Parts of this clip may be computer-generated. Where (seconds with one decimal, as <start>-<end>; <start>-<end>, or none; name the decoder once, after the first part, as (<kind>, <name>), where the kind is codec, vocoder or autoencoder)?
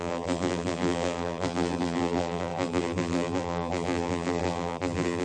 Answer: 0.0-5.2 (vocoder, BigVGAN v2)